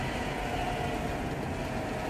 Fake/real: real